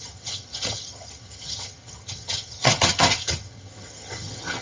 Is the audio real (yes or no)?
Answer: no